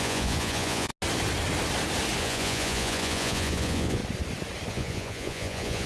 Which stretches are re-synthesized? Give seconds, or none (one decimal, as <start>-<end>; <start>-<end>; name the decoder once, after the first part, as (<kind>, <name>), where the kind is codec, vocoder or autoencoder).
0.0-0.9 (vocoder, Vocos); 2.2-4.0; 4.7-5.9